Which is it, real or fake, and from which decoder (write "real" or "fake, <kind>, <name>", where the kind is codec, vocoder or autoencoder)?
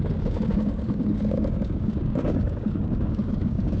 fake, codec, DAC